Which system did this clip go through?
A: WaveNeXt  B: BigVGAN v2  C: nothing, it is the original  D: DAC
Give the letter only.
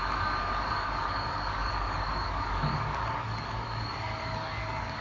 D